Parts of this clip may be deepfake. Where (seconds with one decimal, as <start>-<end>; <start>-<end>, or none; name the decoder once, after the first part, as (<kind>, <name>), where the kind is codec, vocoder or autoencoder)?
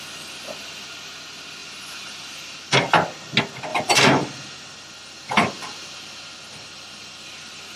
1.6-2.9 (vocoder, BigVGAN v2); 3.7-7.8